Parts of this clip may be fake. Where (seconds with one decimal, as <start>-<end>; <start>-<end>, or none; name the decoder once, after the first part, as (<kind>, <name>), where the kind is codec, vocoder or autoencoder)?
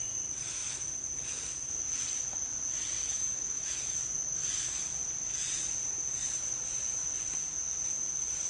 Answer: 3.0-4.0 (autoencoder, DAC-VAE)